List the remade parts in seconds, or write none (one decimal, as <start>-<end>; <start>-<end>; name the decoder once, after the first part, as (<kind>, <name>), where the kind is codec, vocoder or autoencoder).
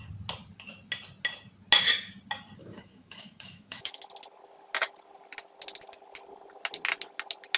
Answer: 2.6-4.0 (autoencoder, DAC-VAE)